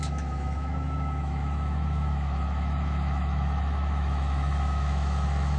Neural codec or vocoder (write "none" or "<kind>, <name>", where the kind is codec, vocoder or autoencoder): autoencoder, DAC-VAE